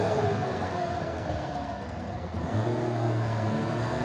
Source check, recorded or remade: remade